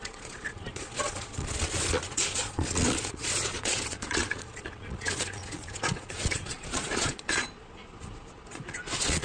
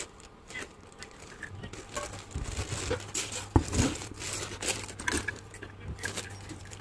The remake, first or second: first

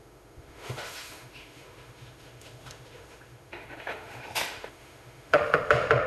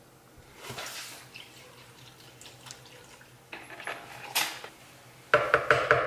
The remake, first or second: first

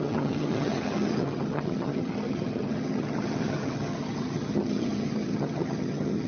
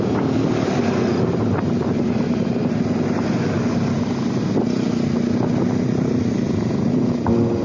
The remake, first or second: first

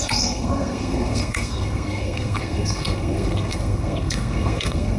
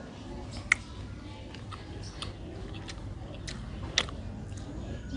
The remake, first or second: first